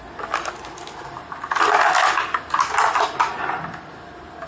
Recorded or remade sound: recorded